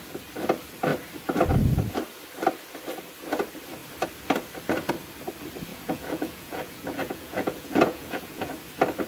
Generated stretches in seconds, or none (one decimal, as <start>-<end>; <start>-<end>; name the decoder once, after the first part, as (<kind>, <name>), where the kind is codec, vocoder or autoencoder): 5.7-8.5 (vocoder, Vocos)